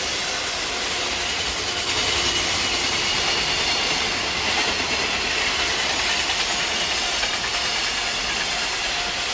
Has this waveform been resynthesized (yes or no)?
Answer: no